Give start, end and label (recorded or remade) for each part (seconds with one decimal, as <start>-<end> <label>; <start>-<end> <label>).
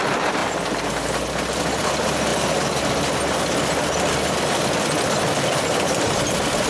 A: 0.0-6.7 recorded